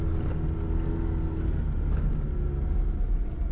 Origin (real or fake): real